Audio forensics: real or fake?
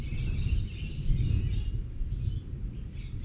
real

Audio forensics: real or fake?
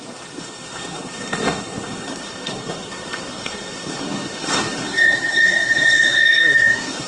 fake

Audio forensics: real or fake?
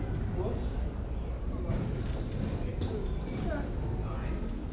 real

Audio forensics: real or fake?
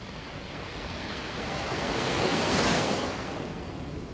fake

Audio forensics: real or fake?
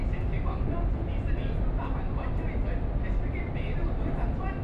real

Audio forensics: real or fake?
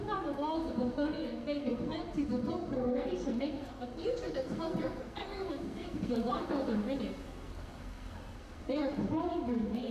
fake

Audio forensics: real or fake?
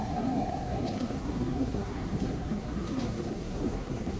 fake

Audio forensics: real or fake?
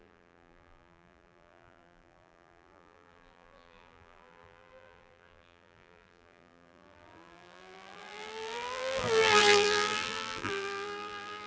fake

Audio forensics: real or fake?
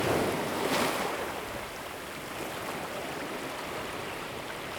real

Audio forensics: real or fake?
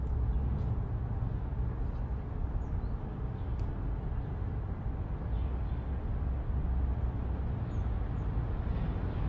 real